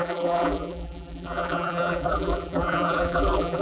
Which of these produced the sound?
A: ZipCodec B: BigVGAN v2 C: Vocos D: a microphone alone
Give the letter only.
B